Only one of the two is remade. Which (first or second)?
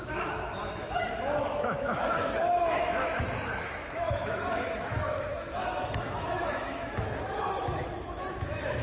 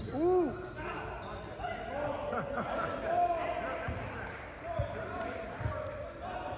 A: first